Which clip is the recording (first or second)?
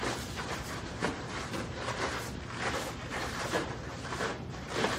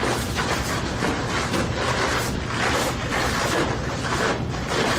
second